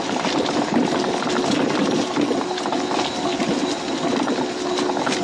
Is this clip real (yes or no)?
yes